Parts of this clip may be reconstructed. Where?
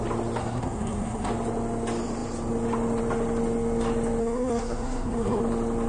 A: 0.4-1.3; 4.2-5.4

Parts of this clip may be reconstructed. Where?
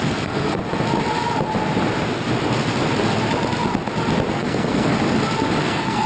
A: 0.0-0.6; 4.3-4.9; 5.6-6.1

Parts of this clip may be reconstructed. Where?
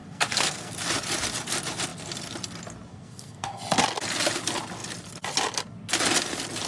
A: 0.0-0.7; 2.9-3.6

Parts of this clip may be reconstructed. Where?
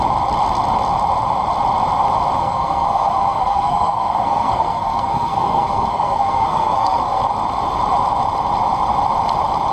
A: 2.4-7.2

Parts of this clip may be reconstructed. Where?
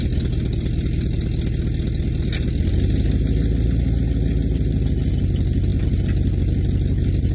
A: none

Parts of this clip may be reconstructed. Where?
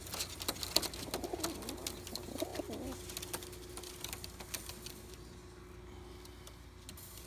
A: none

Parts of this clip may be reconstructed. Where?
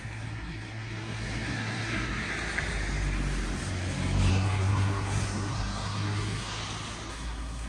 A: 0.0-2.3; 4.3-6.6; 7.1-7.7